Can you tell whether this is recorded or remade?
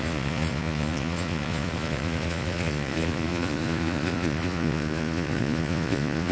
remade